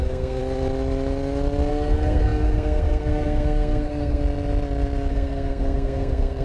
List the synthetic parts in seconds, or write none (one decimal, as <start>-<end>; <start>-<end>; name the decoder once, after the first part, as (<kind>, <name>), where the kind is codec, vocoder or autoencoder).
0.0-0.4 (codec, SNAC); 1.7-4.2; 5.1-6.4